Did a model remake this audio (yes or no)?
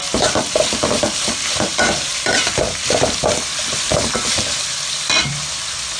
yes